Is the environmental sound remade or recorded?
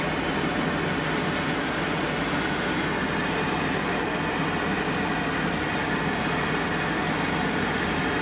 recorded